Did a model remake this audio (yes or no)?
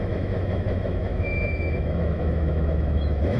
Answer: yes